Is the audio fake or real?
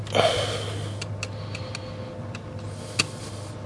real